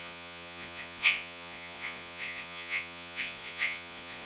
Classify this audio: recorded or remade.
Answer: remade